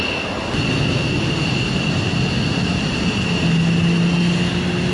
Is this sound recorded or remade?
recorded